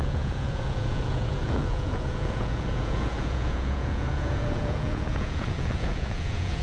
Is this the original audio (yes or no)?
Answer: no